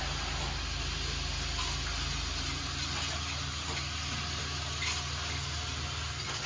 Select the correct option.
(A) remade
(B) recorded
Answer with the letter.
B